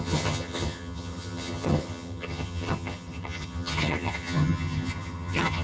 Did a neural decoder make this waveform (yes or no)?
yes